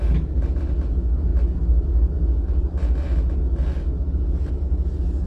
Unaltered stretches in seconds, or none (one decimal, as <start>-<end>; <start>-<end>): 0.0-5.3

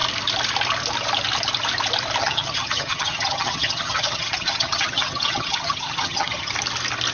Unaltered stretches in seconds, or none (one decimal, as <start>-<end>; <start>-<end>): 0.0-2.2; 6.5-7.1

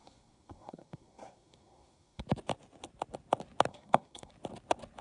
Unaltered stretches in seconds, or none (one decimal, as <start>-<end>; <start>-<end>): 2.2-3.7; 4.3-5.0

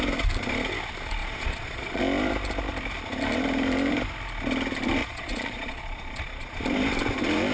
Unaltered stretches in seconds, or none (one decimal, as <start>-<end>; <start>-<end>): 0.0-1.2; 2.0-5.0; 6.6-7.5

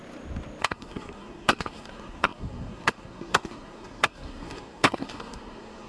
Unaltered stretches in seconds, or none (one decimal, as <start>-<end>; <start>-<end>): 0.0-0.6